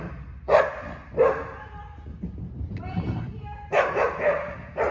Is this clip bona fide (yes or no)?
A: yes